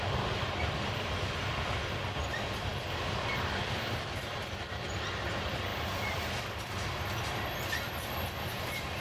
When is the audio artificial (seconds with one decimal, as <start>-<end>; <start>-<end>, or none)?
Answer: none